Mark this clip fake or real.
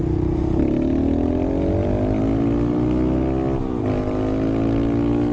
real